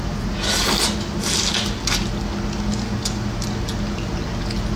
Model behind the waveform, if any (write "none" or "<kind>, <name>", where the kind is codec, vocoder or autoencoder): none